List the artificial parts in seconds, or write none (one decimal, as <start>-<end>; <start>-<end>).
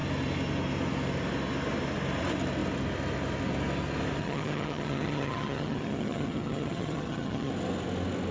4.2-7.5